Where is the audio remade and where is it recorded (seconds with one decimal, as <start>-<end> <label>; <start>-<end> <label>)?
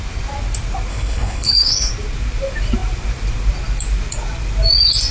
0.0-0.9 recorded; 0.9-1.9 remade; 1.9-5.1 recorded